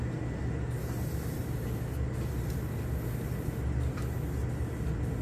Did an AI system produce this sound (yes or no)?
no